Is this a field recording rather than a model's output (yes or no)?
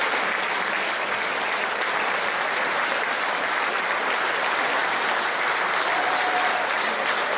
yes